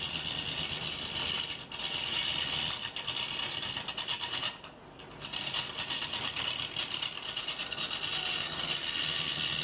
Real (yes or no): yes